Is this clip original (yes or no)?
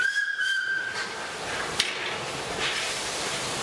no